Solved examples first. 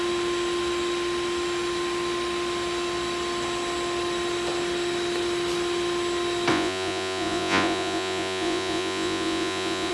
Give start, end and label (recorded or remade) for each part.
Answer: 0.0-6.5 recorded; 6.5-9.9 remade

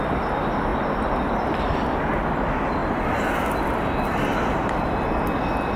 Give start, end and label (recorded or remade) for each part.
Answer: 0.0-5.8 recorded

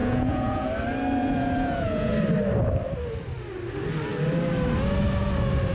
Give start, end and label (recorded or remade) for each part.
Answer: 0.0-0.7 remade; 0.7-1.2 recorded; 1.2-2.1 remade; 2.1-5.7 recorded

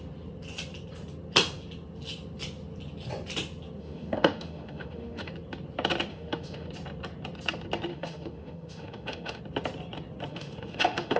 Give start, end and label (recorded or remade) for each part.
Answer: 0.0-3.8 recorded; 3.8-5.3 remade; 5.3-6.1 recorded; 6.1-6.7 remade; 6.7-7.9 recorded; 7.9-9.4 remade; 9.4-10.3 recorded; 10.3-11.2 remade

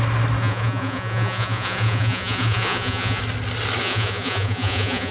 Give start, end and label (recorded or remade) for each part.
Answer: 0.0-0.4 recorded; 0.4-3.2 remade; 3.2-3.8 recorded; 3.8-5.1 remade